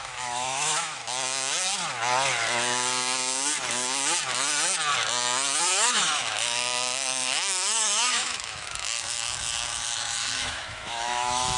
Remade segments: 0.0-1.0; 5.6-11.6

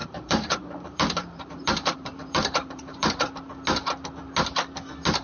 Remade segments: 0.0-3.1